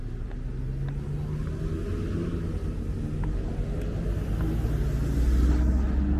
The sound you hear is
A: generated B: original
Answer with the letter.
B